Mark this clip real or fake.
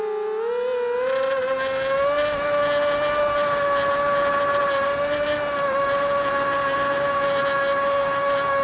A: real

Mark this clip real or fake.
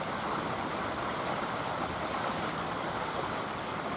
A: real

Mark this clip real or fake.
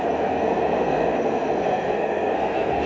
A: fake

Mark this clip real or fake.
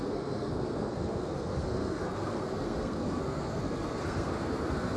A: fake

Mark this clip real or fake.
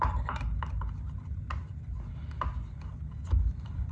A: real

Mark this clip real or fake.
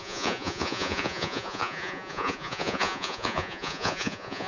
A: fake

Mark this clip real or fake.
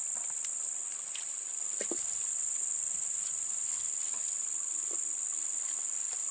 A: real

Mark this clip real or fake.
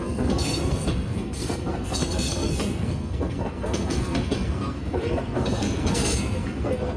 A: fake